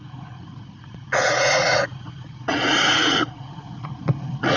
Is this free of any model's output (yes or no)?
no